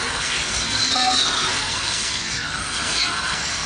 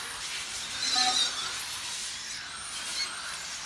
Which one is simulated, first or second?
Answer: first